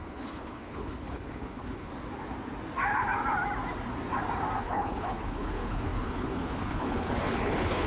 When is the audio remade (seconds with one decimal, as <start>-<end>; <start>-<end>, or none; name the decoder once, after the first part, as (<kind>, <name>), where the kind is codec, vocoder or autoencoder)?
0.0-1.9 (codec, HILCodec); 4.6-7.9